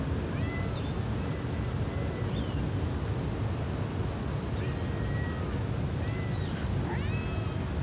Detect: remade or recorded recorded